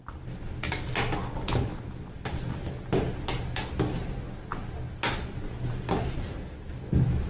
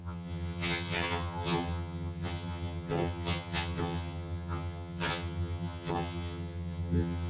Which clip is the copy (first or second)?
second